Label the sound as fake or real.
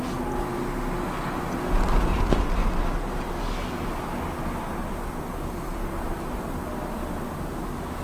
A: real